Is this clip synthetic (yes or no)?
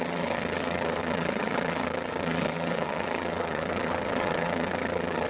yes